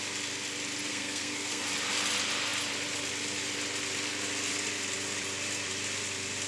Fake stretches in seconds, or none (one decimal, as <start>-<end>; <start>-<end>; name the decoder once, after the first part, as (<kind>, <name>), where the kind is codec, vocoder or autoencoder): 0.9-1.6 (codec, SNAC)